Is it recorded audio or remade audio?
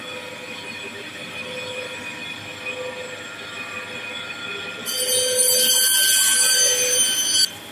recorded